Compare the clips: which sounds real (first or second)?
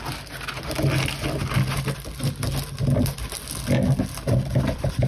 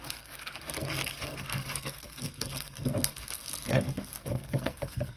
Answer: first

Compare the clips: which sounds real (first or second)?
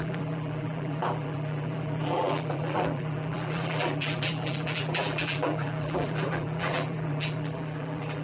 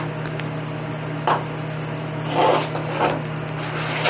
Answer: second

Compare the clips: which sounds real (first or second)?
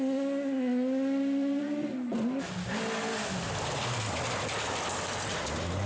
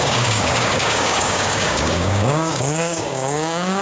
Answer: first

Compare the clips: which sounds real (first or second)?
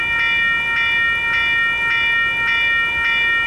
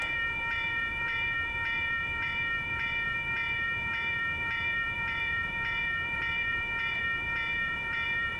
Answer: first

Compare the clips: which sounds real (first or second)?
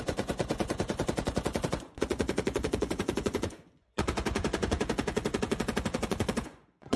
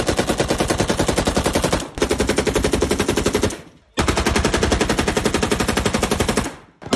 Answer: second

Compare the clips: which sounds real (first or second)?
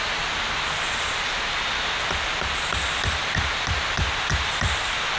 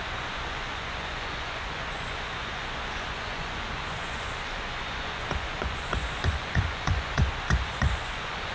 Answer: first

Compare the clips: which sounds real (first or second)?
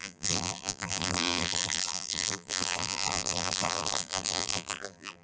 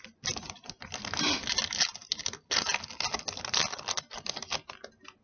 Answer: second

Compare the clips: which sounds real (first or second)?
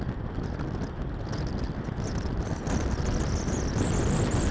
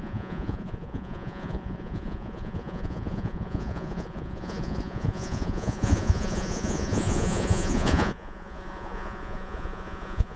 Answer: first